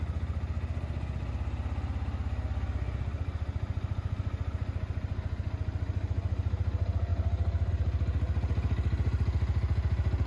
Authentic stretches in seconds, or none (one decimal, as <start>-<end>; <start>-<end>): 0.0-10.3